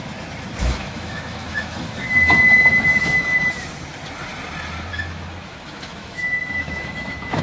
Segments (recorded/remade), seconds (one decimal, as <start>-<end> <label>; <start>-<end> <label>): 0.0-0.6 recorded; 0.6-3.2 remade; 3.2-4.9 recorded; 4.9-7.4 remade